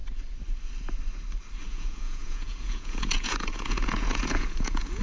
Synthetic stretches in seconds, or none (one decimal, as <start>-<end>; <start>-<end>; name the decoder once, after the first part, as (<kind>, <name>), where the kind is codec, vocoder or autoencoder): 1.7-5.0 (vocoder, Vocos)